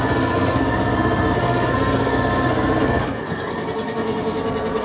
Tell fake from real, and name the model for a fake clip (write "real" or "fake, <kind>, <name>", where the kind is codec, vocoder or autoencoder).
fake, codec, SNAC